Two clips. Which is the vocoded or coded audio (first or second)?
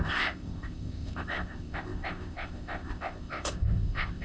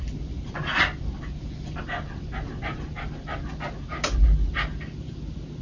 first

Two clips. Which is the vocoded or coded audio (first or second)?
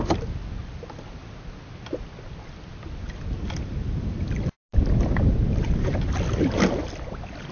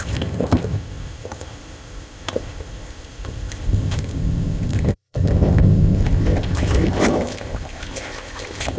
second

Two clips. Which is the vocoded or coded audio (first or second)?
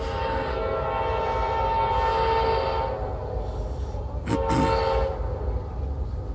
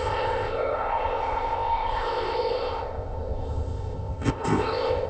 second